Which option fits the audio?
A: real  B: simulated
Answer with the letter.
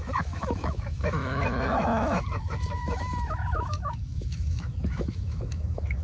B